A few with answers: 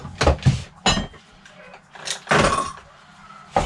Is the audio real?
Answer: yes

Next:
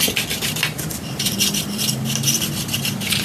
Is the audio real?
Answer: yes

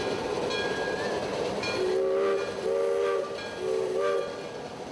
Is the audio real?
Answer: yes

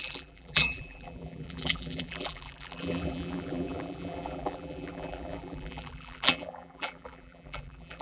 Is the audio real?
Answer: no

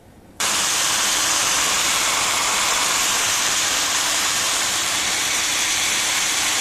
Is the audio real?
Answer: no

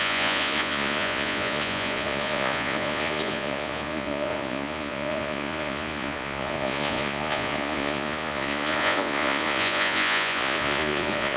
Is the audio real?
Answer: no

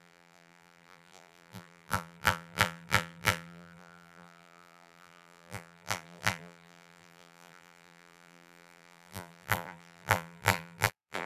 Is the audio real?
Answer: no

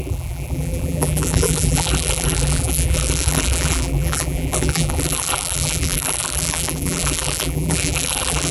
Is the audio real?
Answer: no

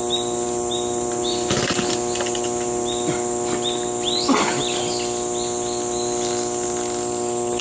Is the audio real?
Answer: yes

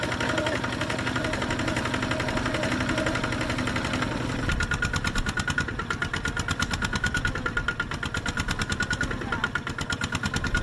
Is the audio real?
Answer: yes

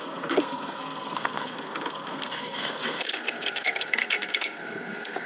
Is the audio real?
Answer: no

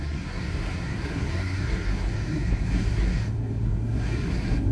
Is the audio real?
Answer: no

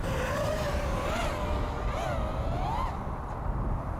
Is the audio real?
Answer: yes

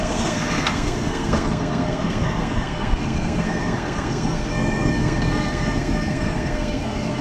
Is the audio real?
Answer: no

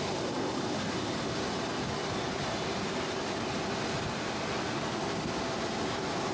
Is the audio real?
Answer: yes